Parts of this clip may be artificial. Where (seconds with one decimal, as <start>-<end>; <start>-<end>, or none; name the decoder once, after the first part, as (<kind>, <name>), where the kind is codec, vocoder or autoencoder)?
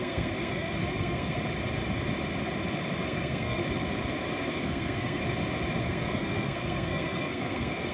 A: 0.0-1.4 (codec, SNAC); 3.0-3.6; 4.5-5.2; 5.8-7.9